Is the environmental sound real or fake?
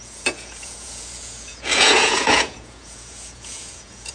fake